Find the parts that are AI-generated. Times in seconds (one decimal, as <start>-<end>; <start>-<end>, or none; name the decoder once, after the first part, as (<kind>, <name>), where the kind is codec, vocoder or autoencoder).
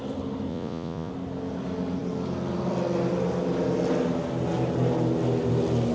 0.5-1.1 (vocoder, Vocos)